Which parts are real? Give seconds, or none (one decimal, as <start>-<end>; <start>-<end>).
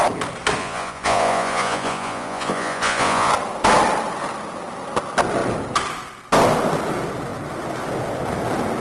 0.0-0.6; 3.3-8.8